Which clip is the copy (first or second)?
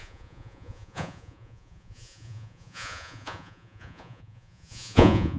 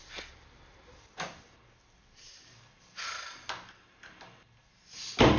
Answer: first